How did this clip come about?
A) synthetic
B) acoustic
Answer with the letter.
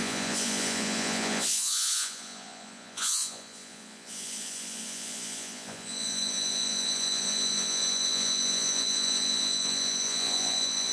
A